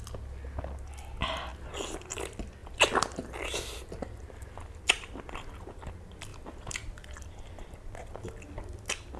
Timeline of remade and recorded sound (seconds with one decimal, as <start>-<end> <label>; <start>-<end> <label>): 0.0-1.5 recorded; 1.5-2.2 remade; 2.2-2.6 recorded; 2.6-5.2 remade; 5.2-6.3 recorded; 6.3-7.7 remade; 7.7-9.2 recorded